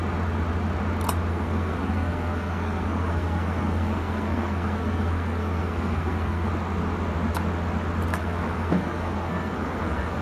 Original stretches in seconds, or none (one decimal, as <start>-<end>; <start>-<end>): 0.0-1.3; 6.5-8.1